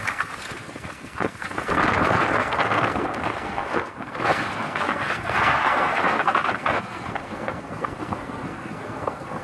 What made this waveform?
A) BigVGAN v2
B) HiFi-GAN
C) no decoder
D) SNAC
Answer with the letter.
D